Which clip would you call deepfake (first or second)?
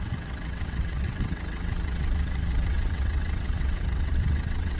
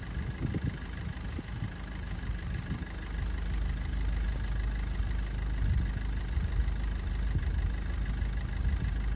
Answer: first